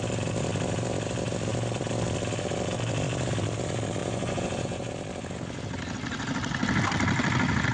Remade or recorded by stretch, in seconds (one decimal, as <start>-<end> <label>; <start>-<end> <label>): 0.0-4.0 recorded; 4.0-4.9 remade; 4.9-7.7 recorded